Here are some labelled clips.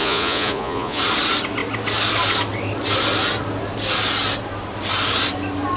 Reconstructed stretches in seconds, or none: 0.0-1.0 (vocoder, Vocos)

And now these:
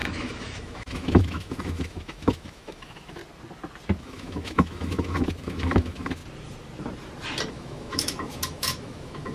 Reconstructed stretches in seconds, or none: 0.0-3.2 (autoencoder, DAC-VAE); 4.0-6.2; 7.5-9.3

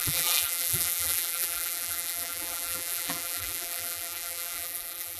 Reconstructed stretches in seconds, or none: 0.0-5.2 (vocoder, BigVGAN v2)

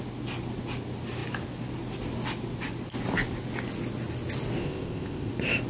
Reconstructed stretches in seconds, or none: 4.6-5.3 (codec, ZipCodec)

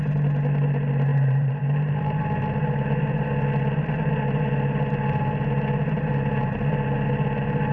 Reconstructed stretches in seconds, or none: 1.1-2.2 (vocoder, BigVGAN v2)

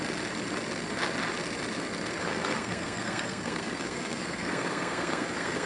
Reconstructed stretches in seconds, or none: 2.2-5.7 (codec, SNAC)

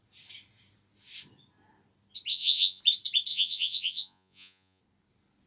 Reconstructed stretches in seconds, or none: 2.3-2.8 (vocoder, Vocos); 3.3-4.8